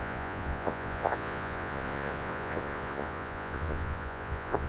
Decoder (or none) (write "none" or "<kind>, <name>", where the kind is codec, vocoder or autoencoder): vocoder, Vocos